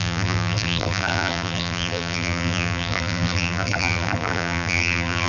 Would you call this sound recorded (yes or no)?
no